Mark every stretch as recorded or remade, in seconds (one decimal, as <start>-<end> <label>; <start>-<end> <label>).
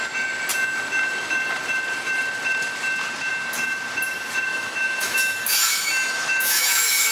0.0-4.5 recorded; 4.5-7.1 remade